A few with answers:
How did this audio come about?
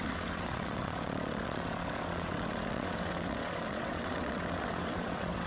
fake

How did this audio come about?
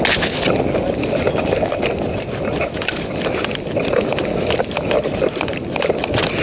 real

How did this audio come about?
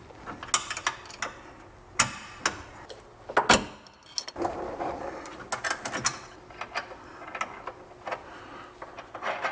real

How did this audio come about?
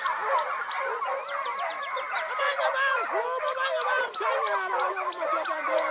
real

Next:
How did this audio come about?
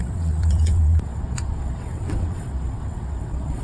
fake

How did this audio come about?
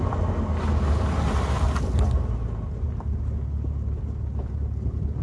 real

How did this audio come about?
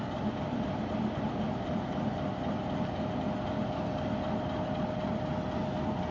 real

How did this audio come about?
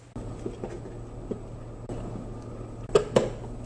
real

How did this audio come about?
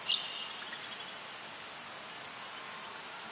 real